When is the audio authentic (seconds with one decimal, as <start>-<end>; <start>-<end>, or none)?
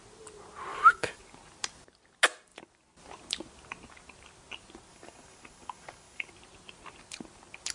0.0-0.7; 1.2-4.9; 6.3-7.7